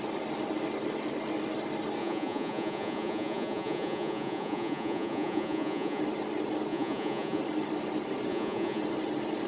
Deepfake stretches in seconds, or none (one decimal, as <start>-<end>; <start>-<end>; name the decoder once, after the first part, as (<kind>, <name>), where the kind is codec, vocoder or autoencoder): 2.0-6.0 (vocoder, Vocos); 6.7-7.4; 8.3-8.8